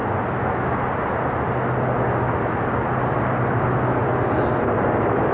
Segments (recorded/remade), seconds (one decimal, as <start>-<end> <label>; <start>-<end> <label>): 0.0-5.3 recorded